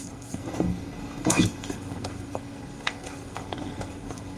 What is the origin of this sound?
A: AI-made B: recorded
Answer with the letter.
A